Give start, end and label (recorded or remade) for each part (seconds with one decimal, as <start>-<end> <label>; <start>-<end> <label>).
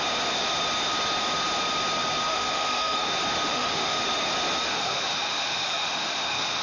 0.0-2.3 recorded; 2.3-3.1 remade; 3.1-3.5 recorded; 3.5-4.0 remade; 4.0-4.7 recorded; 4.7-6.6 remade